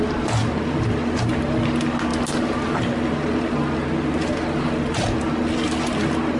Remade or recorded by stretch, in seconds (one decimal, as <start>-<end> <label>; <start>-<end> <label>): 0.0-6.4 recorded